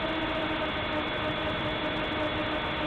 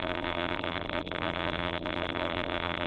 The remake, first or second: second